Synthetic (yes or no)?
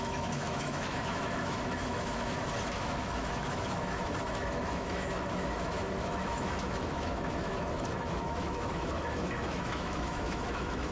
yes